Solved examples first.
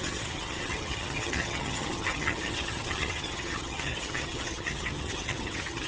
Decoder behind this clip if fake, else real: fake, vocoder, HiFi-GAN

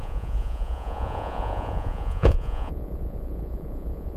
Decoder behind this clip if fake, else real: fake, vocoder, Vocos